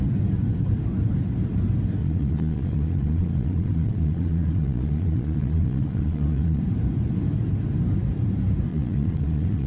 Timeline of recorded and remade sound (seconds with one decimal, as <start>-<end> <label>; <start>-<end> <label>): 0.0-2.0 recorded; 2.0-6.6 remade; 6.6-8.7 recorded; 8.7-9.7 remade